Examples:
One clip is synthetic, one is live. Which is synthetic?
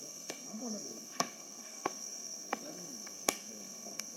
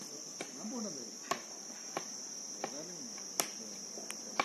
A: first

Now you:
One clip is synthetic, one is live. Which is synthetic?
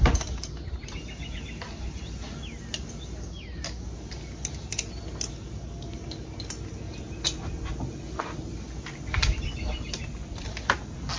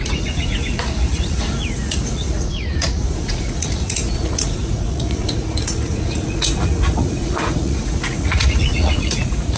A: second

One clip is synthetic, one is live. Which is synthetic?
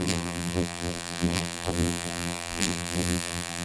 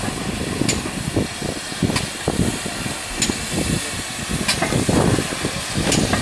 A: first